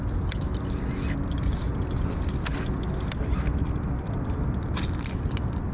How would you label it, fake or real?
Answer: real